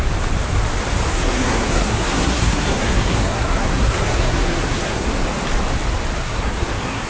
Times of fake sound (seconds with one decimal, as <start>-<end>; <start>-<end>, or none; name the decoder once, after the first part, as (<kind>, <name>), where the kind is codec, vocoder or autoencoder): 1.1-5.1 (codec, SNAC); 6.2-7.1